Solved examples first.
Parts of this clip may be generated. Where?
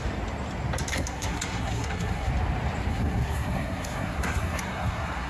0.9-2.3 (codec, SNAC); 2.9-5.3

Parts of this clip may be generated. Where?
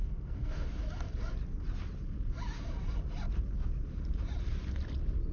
0.0-0.7 (codec, SNAC)